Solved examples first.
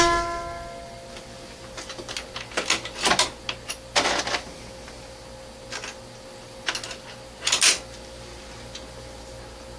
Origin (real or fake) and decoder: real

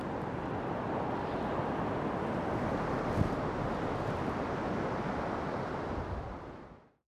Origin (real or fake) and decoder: real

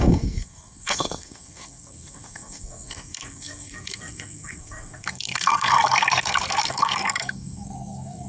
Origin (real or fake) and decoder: fake, codec, SNAC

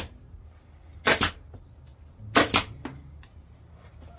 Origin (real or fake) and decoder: real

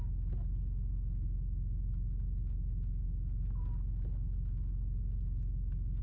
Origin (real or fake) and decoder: real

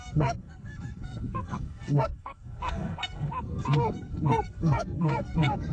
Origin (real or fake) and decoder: fake, codec, SNAC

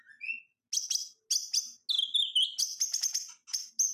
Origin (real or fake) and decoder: real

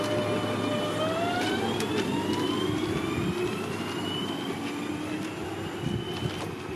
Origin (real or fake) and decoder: real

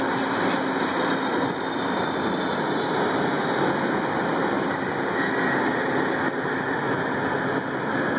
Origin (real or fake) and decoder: real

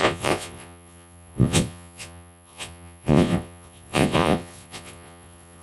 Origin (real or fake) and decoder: fake, vocoder, Vocos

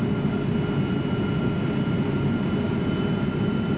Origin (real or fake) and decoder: real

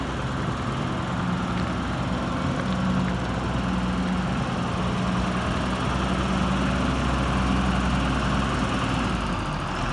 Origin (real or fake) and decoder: real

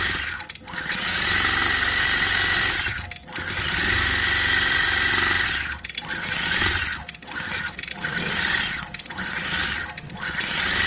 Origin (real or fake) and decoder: real